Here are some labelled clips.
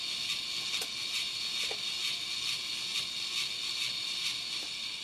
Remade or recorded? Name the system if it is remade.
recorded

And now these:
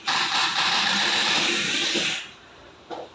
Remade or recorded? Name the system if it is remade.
remade, vocoder, BigVGAN v2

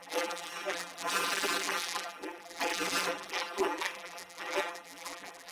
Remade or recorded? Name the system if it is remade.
remade, vocoder, BigVGAN v2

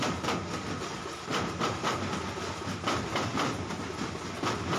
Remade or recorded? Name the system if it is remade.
recorded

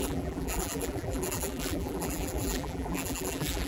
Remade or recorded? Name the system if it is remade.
remade, vocoder, BigVGAN v2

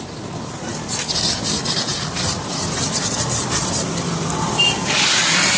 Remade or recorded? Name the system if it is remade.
remade, vocoder, BigVGAN v2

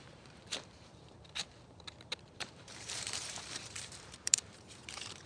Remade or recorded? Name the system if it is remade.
remade, vocoder, BigVGAN v2